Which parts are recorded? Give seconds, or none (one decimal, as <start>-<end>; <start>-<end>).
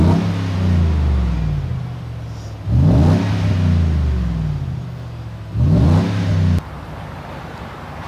0.0-8.1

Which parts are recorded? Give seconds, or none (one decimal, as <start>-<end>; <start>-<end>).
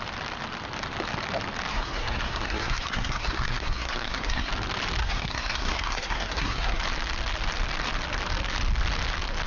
0.0-1.7; 4.5-5.0; 6.8-9.5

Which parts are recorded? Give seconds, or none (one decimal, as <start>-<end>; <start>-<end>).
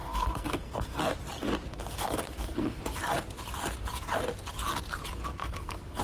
1.0-1.7; 2.8-5.3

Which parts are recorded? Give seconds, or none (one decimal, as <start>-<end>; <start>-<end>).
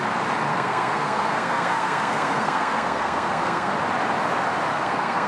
0.0-0.5; 3.7-4.7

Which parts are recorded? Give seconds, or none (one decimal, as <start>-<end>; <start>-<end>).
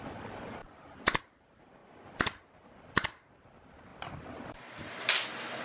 0.0-5.6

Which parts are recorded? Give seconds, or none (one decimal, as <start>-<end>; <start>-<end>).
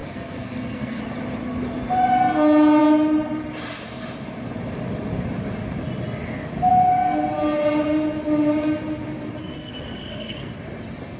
1.0-9.4; 10.5-11.2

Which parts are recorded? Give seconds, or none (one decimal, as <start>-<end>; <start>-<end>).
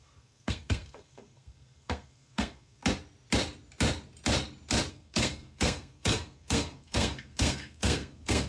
2.8-4.9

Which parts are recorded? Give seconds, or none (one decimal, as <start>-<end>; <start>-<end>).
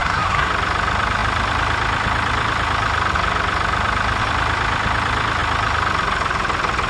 0.5-6.9